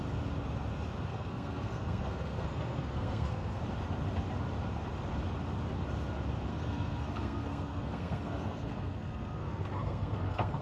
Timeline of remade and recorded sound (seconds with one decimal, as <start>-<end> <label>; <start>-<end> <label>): 0.0-1.1 recorded; 1.1-3.6 remade; 3.6-6.5 recorded; 6.5-10.6 remade